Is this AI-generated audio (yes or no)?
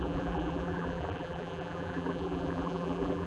yes